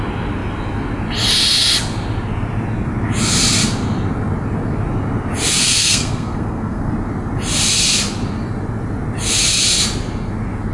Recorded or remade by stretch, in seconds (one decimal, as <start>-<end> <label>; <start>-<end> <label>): 0.0-5.6 recorded; 5.6-6.9 remade; 6.9-10.7 recorded